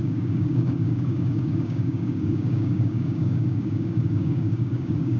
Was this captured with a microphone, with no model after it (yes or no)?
no